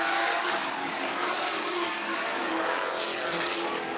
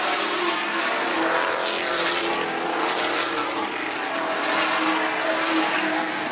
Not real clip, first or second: first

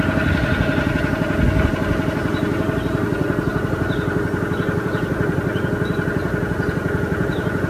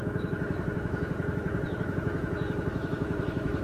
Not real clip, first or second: second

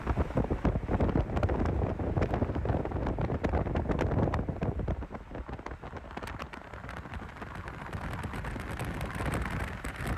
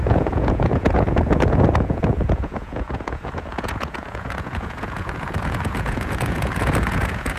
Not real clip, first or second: second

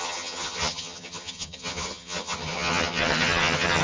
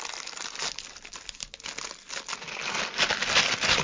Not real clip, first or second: first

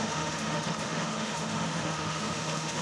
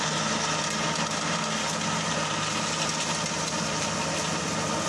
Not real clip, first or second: first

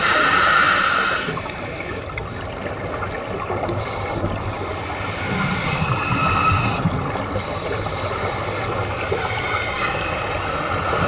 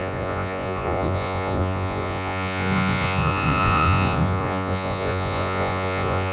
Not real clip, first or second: second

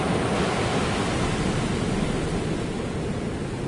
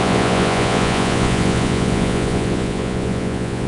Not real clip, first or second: second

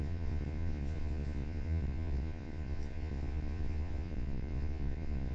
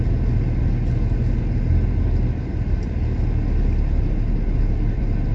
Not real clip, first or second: first